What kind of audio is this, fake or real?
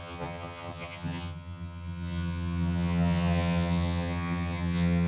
fake